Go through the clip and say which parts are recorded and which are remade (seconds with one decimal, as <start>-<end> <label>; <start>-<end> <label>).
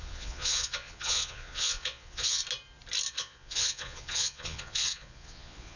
0.0-2.4 remade; 2.4-3.1 recorded; 3.1-5.8 remade